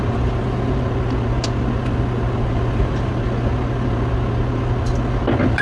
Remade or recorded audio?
recorded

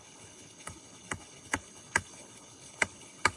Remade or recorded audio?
remade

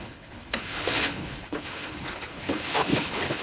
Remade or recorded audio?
remade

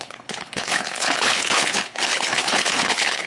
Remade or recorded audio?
remade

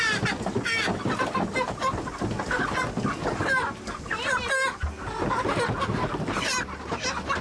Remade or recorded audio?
recorded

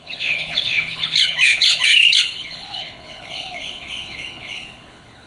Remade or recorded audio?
remade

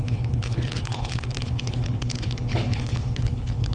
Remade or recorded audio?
remade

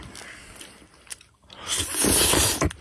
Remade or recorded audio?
recorded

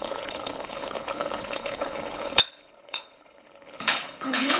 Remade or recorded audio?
remade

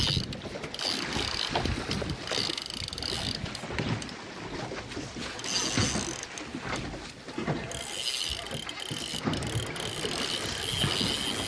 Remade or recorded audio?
recorded